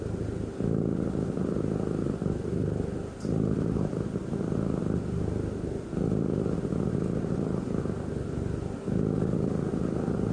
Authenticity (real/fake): real